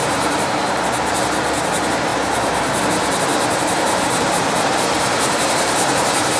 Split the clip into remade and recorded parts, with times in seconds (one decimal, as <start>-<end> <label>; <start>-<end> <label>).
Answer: 0.0-0.8 remade; 0.8-2.1 recorded; 2.1-2.8 remade; 2.8-3.3 recorded; 3.3-6.4 remade